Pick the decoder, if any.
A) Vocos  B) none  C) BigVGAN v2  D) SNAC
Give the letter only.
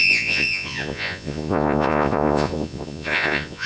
A